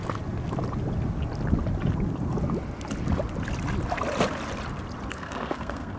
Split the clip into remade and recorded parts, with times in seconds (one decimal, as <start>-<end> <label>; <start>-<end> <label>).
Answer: 0.0-5.1 recorded; 5.1-6.0 remade